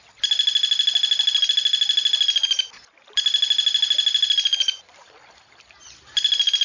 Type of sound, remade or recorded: recorded